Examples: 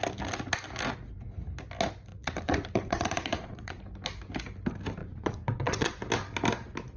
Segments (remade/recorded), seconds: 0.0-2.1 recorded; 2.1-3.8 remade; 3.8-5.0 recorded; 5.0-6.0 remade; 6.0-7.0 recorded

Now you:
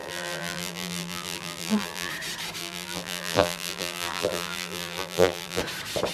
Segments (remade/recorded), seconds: 0.0-2.1 remade; 2.1-2.6 recorded; 2.6-5.6 remade; 5.6-6.1 recorded

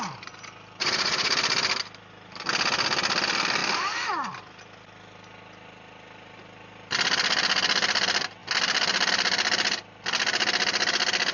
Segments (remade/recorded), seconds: 0.0-0.8 recorded; 0.8-1.3 remade; 1.3-11.3 recorded

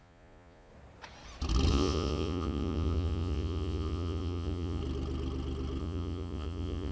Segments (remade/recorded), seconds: 0.0-0.7 remade; 0.7-1.7 recorded; 1.7-4.8 remade; 4.8-5.8 recorded; 5.8-6.9 remade

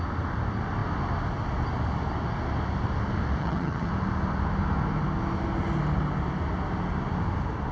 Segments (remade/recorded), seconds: 0.0-3.4 recorded; 3.4-3.9 remade; 3.9-7.7 recorded

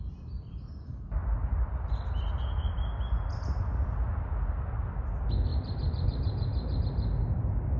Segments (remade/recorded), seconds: 0.0-1.2 recorded; 1.2-1.9 remade; 1.9-5.5 recorded; 5.5-6.8 remade; 6.8-7.8 recorded

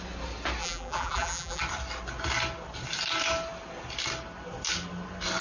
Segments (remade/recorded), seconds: 0.0-0.6 recorded; 0.6-1.6 remade; 1.6-5.4 recorded

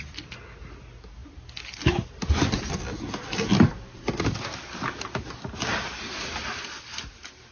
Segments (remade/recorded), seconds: 0.0-7.5 recorded